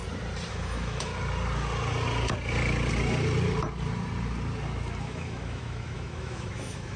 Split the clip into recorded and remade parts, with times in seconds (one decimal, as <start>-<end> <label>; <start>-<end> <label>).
0.0-0.5 recorded; 0.5-1.1 remade; 1.1-5.0 recorded; 5.0-7.0 remade